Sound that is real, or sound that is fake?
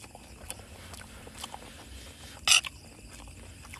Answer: real